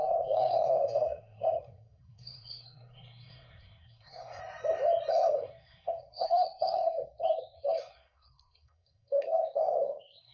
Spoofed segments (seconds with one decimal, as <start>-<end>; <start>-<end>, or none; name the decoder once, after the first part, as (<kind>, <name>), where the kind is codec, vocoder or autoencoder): 0.0-4.4 (codec, SNAC); 5.1-10.3